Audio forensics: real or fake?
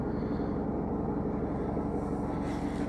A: real